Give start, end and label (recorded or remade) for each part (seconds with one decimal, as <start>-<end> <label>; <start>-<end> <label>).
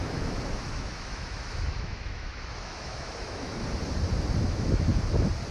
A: 0.0-3.6 remade; 3.6-4.4 recorded; 4.4-4.9 remade; 4.9-5.5 recorded